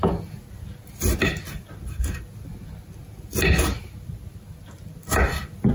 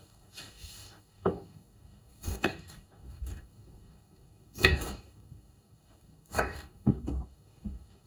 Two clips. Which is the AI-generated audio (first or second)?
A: second